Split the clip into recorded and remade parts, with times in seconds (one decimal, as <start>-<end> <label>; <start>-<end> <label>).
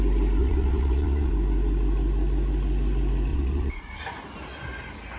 0.0-0.4 recorded; 0.4-1.3 remade; 1.3-3.3 recorded; 3.3-4.0 remade; 4.0-5.2 recorded